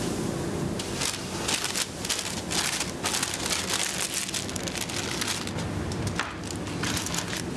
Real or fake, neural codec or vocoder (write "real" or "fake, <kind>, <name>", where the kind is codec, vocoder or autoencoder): real